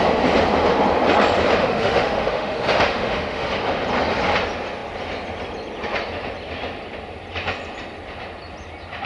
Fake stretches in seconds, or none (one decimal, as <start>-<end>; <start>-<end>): 1.6-3.5